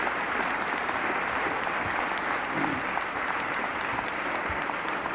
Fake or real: fake